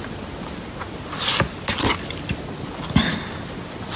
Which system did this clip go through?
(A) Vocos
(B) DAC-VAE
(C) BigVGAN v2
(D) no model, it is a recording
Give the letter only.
D